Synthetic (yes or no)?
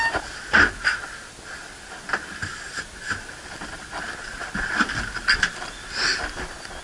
no